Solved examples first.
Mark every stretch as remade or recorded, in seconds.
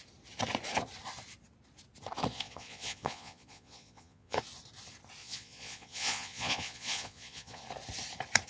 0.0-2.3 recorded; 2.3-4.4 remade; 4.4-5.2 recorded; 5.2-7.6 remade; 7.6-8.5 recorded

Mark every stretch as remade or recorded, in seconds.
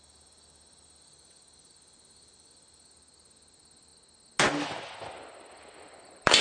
0.0-3.9 remade; 3.9-5.8 recorded; 5.8-6.4 remade